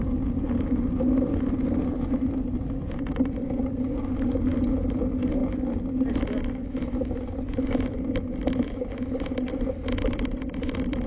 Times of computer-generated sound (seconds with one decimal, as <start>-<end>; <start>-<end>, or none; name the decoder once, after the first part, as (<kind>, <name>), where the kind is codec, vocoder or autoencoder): none